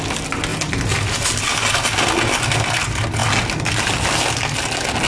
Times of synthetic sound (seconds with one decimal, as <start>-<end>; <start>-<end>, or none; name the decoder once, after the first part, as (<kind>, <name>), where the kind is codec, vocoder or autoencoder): none